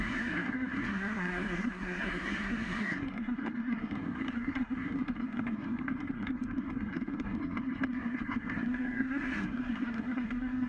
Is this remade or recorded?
remade